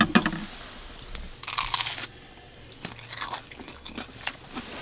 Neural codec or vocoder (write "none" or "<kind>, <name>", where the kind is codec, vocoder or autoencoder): none